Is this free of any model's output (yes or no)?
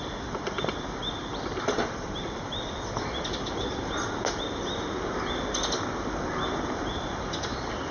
yes